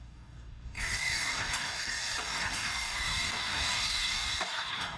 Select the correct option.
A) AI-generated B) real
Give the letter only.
A